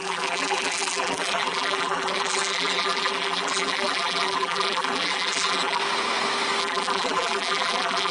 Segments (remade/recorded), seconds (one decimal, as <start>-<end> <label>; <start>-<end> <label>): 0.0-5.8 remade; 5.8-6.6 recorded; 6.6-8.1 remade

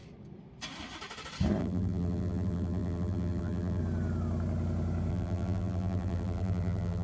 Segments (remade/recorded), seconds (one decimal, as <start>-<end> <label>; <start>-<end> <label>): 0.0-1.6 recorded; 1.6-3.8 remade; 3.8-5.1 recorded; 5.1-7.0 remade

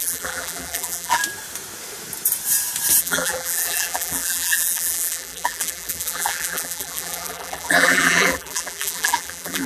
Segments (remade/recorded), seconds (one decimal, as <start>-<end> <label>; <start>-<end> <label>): 0.0-1.2 remade; 1.2-3.0 recorded; 3.0-9.7 remade